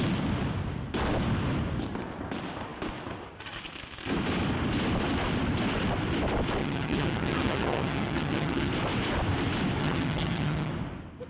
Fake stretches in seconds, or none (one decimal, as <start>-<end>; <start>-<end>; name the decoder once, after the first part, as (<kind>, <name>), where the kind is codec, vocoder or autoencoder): 6.6-8.7 (vocoder, HiFi-GAN); 9.8-10.7